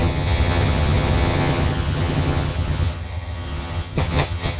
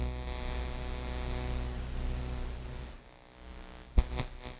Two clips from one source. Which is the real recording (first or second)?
second